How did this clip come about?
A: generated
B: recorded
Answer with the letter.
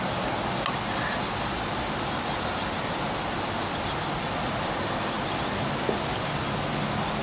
B